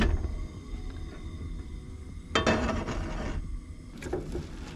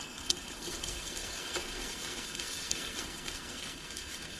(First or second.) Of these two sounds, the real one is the first